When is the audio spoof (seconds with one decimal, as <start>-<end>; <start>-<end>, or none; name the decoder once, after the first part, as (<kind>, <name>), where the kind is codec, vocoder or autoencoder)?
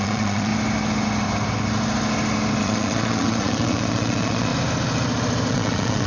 0.0-0.5 (vocoder, Vocos); 2.6-4.5; 5.5-6.1